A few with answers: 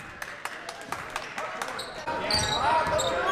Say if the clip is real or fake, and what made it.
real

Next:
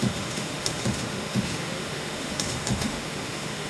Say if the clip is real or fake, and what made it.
fake, autoencoder, DAC-VAE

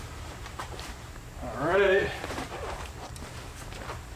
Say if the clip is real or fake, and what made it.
fake, vocoder, BigVGAN v2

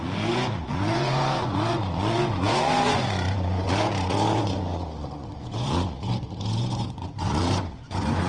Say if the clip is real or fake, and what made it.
fake, vocoder, Vocos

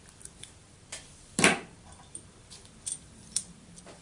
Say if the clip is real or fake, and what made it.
fake, vocoder, BigVGAN v2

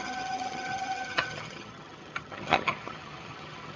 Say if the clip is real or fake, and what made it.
fake, vocoder, HiFi-GAN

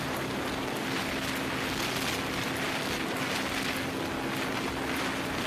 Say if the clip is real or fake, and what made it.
real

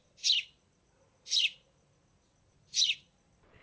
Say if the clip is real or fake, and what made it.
real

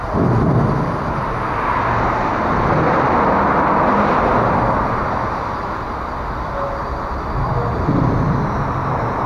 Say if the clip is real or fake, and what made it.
real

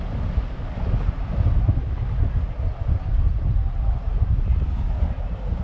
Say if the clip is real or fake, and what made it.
real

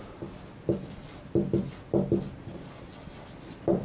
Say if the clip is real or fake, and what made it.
real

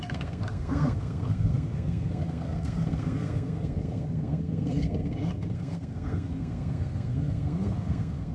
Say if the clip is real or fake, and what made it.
fake, codec, SNAC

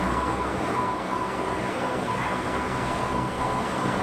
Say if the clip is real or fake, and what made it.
fake, codec, SNAC